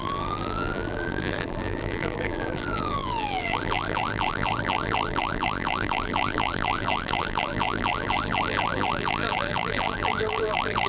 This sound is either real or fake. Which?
fake